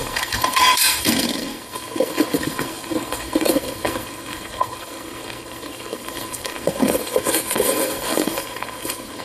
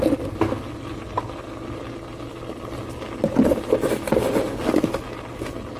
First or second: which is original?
second